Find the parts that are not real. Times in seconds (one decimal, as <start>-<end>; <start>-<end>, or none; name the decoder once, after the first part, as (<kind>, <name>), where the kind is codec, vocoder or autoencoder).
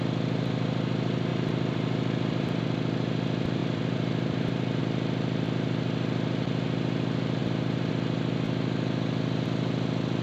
1.3-2.6 (vocoder, BigVGAN v2); 3.6-4.8; 7.4-7.9